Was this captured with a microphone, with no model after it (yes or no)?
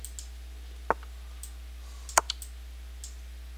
yes